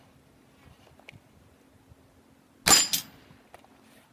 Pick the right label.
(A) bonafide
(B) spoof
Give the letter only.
A